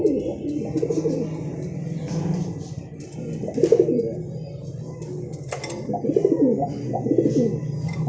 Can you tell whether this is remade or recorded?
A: recorded